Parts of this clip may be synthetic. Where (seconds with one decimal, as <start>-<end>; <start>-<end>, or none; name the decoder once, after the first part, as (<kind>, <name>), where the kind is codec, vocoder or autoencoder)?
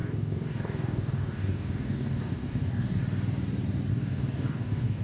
0.0-3.0 (codec, DAC); 3.9-5.0